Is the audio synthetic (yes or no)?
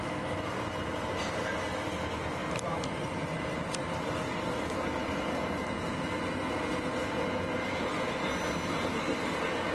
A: no